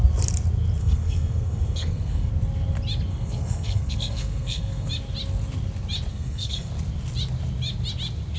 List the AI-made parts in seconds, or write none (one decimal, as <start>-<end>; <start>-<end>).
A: 0.8-2.3; 3.1-4.9; 6.1-6.7